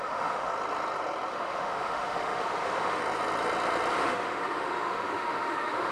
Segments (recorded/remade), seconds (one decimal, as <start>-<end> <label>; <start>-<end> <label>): 0.0-0.5 remade; 0.5-1.3 recorded; 1.3-3.0 remade; 3.0-3.9 recorded; 3.9-5.9 remade